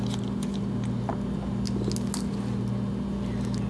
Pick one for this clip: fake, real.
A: real